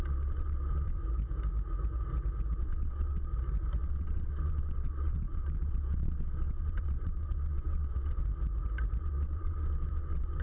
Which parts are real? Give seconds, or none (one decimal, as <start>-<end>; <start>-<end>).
1.0-2.6; 3.3-3.8; 8.2-9.0